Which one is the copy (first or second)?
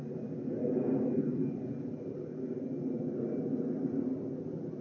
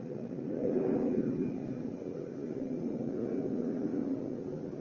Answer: second